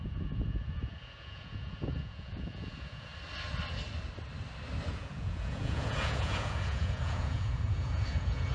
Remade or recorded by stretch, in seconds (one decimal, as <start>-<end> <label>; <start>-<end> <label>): 0.0-3.1 remade; 3.1-4.9 recorded; 4.9-8.5 remade